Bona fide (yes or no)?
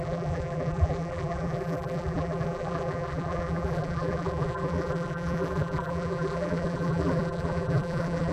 no